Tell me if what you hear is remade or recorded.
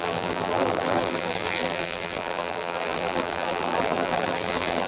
remade